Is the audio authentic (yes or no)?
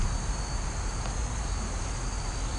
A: yes